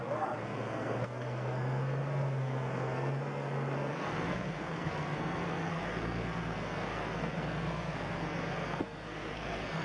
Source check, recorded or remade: remade